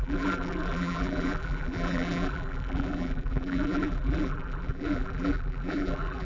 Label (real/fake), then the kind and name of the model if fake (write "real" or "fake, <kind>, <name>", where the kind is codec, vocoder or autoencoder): fake, vocoder, BigVGAN v2